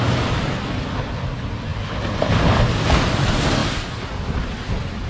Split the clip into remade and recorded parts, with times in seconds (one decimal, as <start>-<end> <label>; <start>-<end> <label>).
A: 0.0-5.1 recorded